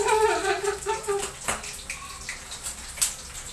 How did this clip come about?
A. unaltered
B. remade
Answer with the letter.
A